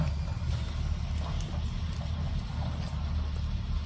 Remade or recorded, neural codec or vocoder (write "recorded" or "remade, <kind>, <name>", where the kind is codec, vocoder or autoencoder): recorded